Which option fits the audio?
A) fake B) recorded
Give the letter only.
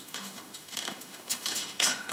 A